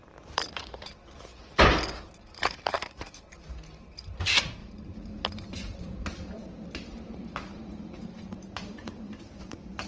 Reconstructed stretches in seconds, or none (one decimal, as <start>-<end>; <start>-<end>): 0.0-1.3; 3.3-4.6; 5.5-9.9